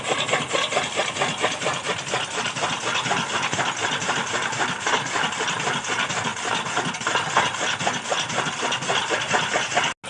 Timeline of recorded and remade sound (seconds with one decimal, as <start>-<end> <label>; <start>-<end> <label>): 0.0-10.1 recorded